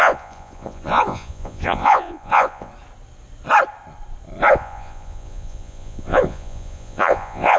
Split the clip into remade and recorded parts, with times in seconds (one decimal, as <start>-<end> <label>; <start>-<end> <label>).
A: 0.0-2.7 remade; 2.7-4.5 recorded; 4.5-7.6 remade